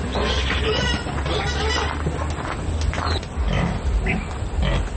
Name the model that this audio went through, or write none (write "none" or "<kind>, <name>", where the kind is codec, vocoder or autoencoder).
none